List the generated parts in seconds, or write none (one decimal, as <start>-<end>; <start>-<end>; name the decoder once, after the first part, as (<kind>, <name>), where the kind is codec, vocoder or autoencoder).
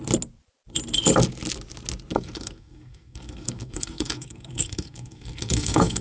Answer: 2.1-6.0 (codec, SNAC)